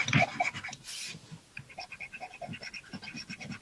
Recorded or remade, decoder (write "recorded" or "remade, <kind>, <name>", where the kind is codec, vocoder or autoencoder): recorded